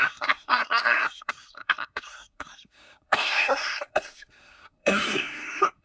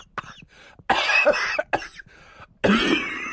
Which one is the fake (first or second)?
first